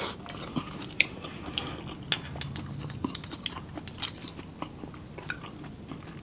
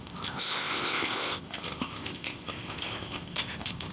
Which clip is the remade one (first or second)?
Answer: second